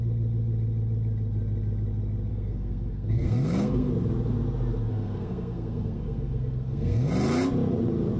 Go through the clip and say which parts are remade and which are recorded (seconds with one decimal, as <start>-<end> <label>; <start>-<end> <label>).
0.0-2.3 recorded; 2.3-3.9 remade; 3.9-4.9 recorded; 4.9-7.1 remade; 7.1-8.2 recorded